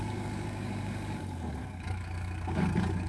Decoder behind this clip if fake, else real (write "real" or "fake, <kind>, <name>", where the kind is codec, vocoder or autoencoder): fake, codec, DAC